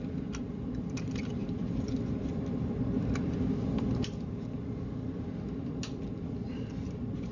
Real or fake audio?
fake